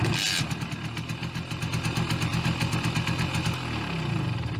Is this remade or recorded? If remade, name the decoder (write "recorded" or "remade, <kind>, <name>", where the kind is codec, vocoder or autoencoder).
recorded